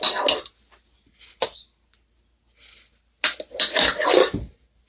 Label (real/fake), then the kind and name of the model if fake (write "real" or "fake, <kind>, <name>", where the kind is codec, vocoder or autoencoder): real